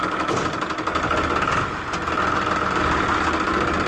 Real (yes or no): yes